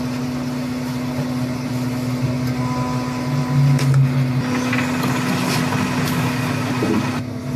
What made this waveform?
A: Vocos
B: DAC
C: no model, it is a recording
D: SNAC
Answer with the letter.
C